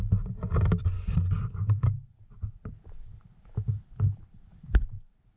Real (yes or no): yes